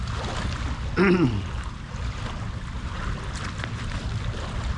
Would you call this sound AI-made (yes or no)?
no